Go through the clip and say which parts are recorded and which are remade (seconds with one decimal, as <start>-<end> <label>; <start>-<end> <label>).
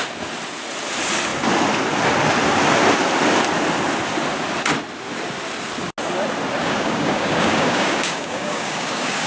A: 0.0-6.6 recorded; 6.6-9.3 remade